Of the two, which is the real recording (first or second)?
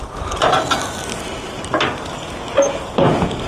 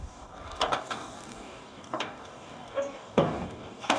first